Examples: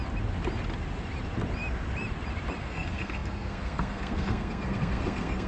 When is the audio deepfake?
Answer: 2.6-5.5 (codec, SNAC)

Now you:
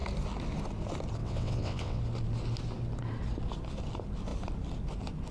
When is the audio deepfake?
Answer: 1.2-2.0 (vocoder, WaveNeXt)

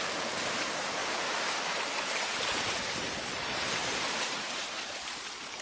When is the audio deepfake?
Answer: 0.0-1.0 (vocoder, BigVGAN v2); 2.0-5.6

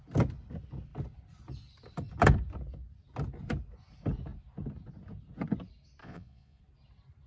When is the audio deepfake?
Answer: 6.0-6.6 (vocoder, Vocos)

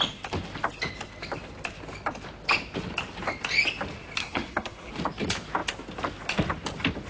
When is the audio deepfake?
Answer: 4.2-4.9 (codec, SNAC)

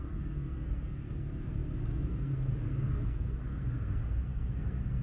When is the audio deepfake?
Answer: 0.0-5.0 (codec, SNAC)

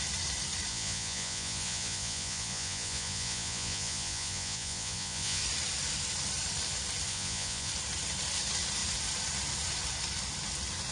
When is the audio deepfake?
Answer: 0.7-5.4 (vocoder, Vocos); 7.1-7.7